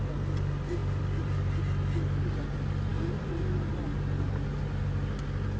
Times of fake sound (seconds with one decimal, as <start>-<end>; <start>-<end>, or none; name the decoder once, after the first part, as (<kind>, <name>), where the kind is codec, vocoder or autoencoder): 0.8-1.6 (vocoder, BigVGAN v2); 2.9-3.7